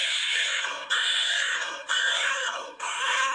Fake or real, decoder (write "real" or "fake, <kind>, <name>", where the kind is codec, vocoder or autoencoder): fake, codec, SNAC